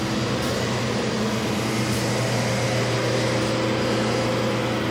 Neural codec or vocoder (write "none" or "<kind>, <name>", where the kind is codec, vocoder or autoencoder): none